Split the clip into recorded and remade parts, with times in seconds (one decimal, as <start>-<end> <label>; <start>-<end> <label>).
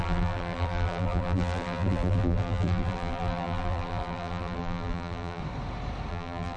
0.0-5.4 remade; 5.4-6.1 recorded; 6.1-6.6 remade